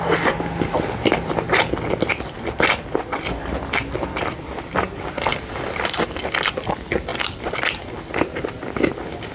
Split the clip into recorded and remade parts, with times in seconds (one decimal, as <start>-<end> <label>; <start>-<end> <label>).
0.0-9.3 recorded